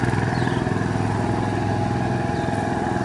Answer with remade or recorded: recorded